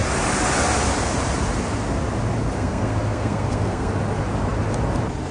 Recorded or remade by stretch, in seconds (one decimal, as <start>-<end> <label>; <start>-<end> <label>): 0.0-2.4 recorded; 2.4-3.9 remade; 3.9-5.3 recorded